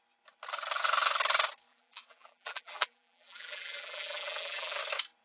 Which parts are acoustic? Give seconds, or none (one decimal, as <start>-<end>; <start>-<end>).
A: 0.0-1.7; 4.8-5.2